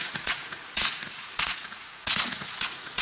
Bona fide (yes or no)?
no